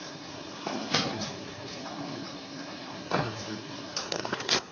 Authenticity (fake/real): fake